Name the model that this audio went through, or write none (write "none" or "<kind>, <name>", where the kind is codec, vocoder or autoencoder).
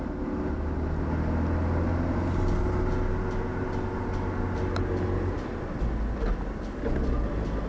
none